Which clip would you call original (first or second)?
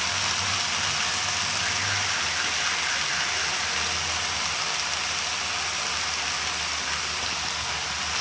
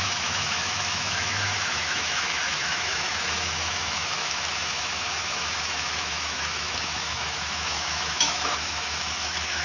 first